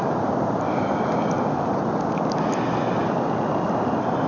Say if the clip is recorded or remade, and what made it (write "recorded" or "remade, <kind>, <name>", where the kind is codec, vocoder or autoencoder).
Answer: recorded